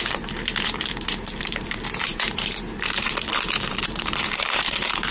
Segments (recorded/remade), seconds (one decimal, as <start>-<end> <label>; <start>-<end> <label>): 0.0-5.1 remade